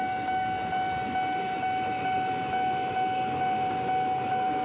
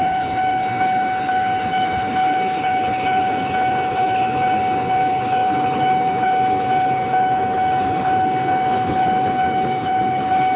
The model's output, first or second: second